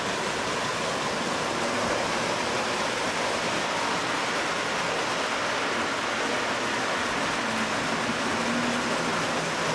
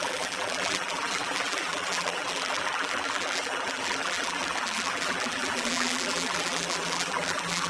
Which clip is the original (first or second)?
first